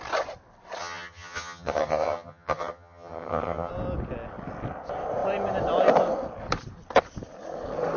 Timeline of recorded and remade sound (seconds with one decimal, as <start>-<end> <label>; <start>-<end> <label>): 0.0-0.8 recorded; 0.8-3.7 remade; 3.7-8.0 recorded